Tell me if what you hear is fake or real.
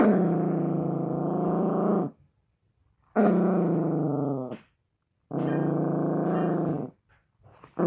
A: real